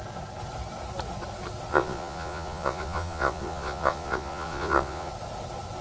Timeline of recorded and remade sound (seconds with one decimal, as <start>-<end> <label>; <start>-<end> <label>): 0.0-1.7 recorded; 1.7-5.1 remade; 5.1-5.8 recorded

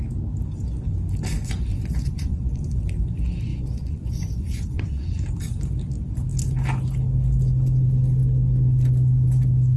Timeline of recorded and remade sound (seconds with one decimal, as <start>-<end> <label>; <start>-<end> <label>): 0.0-1.7 recorded; 1.7-2.8 remade; 2.8-3.5 recorded; 3.5-5.2 remade; 5.2-9.8 recorded

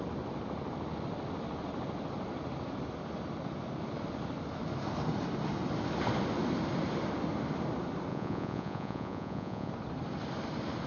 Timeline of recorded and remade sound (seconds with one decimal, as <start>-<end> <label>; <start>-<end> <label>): 0.0-8.1 recorded; 8.1-9.7 remade; 9.7-10.9 recorded

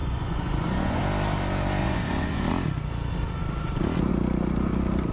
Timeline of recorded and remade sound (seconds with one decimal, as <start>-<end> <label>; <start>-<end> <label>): 0.0-1.0 remade; 1.0-1.8 recorded; 1.8-2.5 remade; 2.5-5.1 recorded

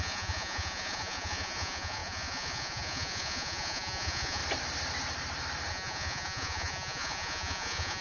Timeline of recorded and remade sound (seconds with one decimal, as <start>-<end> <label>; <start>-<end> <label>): 0.0-4.4 remade; 4.4-5.7 recorded; 5.7-8.0 remade

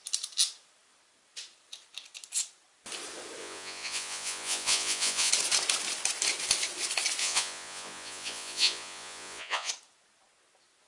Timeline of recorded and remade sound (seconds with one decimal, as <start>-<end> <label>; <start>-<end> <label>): 0.0-3.4 recorded; 3.4-5.3 remade; 5.3-7.2 recorded; 7.2-9.7 remade; 9.7-10.9 recorded